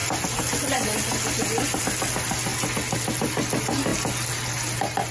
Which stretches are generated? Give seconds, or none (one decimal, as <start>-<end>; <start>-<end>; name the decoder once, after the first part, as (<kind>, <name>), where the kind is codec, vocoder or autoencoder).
none